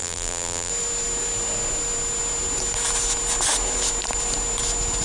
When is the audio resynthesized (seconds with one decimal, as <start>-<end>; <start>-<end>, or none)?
0.0-0.7